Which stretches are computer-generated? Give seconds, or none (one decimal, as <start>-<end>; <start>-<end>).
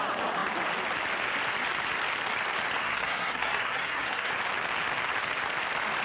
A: 2.8-4.3